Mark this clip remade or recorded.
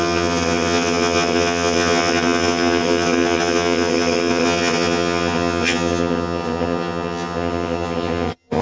remade